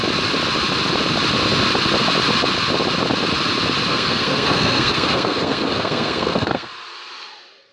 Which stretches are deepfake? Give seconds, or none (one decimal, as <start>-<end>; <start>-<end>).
3.9-6.7